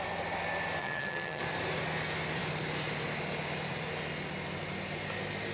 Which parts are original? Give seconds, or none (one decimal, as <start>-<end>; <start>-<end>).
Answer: 0.0-0.8; 1.4-5.5